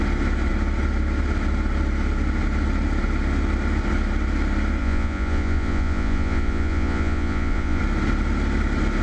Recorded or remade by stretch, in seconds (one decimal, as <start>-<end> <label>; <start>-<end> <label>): 0.0-4.8 recorded; 4.8-7.8 remade; 7.8-9.0 recorded